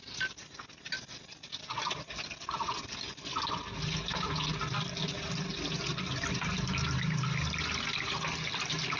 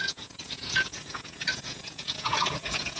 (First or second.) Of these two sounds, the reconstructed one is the second